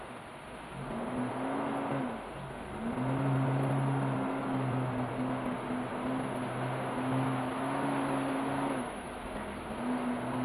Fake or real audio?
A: real